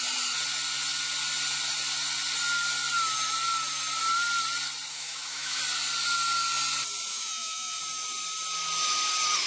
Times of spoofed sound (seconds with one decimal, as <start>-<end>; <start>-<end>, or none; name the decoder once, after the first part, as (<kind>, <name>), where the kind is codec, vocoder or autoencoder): 4.9-5.6 (autoencoder, DAC-VAE); 7.1-7.8